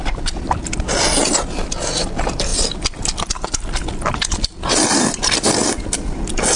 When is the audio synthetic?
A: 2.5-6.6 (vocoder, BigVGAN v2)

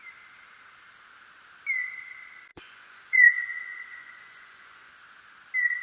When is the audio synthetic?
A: 2.5-4.9 (vocoder, Vocos)

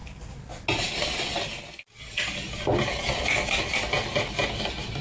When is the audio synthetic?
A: none